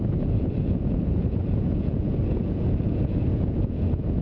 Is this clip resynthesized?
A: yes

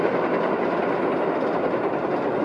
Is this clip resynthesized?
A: no